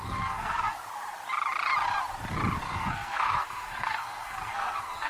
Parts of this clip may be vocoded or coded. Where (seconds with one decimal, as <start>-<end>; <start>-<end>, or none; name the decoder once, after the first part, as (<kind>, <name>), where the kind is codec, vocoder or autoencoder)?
0.0-0.8 (codec, SNAC); 2.6-5.1